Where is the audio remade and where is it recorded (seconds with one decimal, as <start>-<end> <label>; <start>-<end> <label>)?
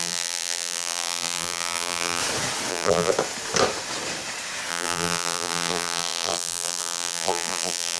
0.0-2.2 remade; 2.2-2.7 recorded; 2.7-3.1 remade; 3.1-4.7 recorded; 4.7-8.0 remade